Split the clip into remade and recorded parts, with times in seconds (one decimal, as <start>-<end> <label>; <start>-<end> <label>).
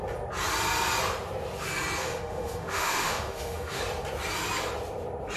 0.0-2.0 recorded; 2.0-3.8 remade; 3.8-5.4 recorded